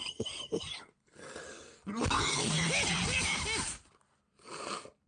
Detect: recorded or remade recorded